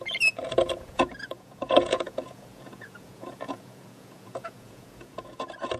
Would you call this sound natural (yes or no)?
no